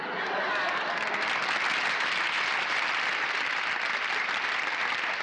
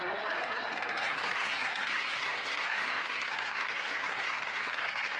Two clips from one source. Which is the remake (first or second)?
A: second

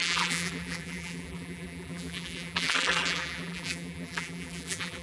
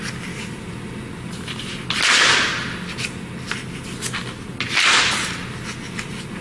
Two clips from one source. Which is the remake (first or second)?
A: first